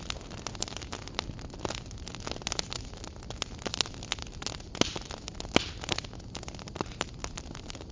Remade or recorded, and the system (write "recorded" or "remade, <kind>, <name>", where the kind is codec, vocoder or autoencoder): recorded